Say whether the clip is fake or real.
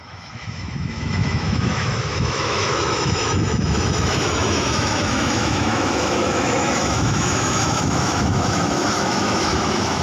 fake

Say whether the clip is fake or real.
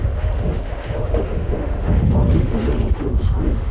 fake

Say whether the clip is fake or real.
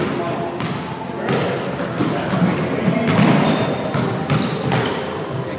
real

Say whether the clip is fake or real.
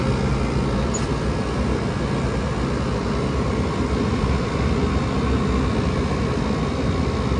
real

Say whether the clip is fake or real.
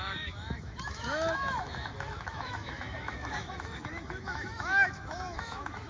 fake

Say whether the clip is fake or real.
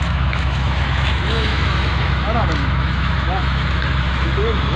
fake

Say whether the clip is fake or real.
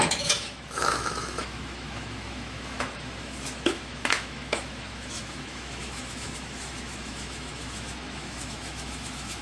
fake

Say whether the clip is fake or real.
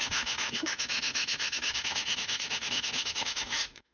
fake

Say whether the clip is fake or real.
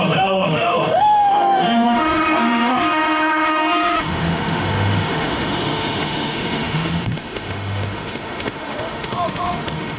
fake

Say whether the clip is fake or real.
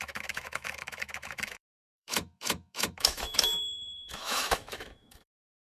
fake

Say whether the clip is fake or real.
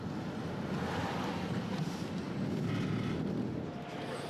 real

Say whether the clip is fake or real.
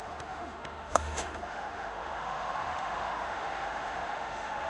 fake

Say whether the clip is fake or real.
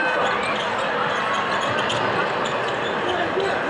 real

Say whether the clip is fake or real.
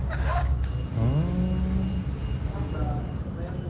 real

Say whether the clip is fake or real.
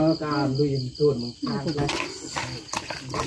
real